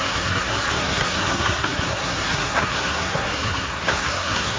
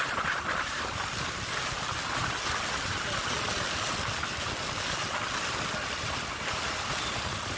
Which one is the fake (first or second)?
first